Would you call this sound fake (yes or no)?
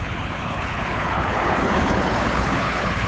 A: yes